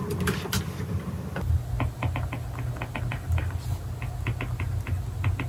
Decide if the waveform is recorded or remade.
recorded